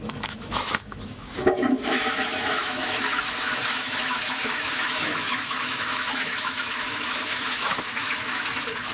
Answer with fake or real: fake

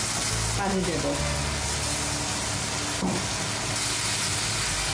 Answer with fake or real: real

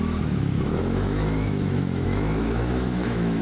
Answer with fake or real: fake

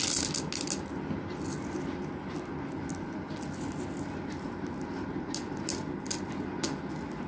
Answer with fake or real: real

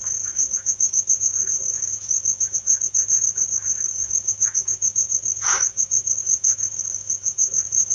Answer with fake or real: fake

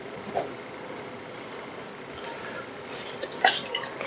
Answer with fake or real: real